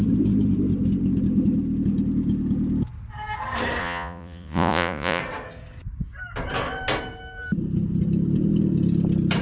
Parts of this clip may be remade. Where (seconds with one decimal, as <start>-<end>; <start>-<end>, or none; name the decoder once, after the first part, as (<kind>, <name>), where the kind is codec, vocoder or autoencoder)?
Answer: 3.8-5.2 (vocoder, Vocos)